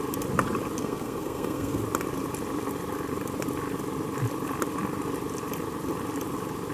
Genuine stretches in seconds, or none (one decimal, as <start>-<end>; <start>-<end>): 0.0-0.8; 1.8-6.7